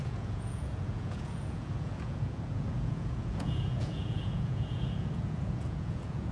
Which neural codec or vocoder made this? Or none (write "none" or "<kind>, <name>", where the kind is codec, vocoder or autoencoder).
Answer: vocoder, Vocos